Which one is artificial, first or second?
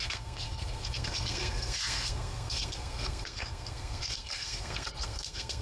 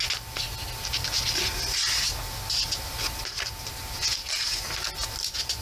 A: first